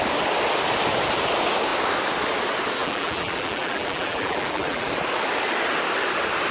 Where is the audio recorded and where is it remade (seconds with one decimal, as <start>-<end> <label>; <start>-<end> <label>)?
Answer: 0.0-2.8 recorded; 2.8-4.9 remade; 4.9-6.5 recorded